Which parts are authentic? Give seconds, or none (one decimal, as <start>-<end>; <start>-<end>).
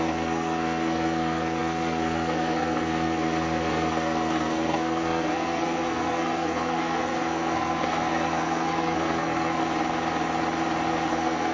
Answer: 9.6-11.1